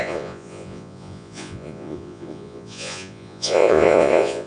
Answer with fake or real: fake